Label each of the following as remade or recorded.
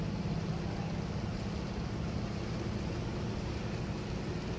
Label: recorded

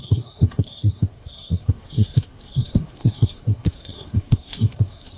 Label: remade